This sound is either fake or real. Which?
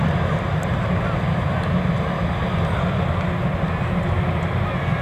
real